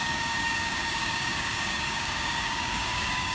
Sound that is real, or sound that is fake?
fake